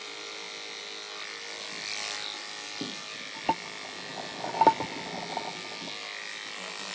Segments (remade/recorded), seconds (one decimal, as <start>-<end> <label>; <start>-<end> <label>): 0.0-6.9 recorded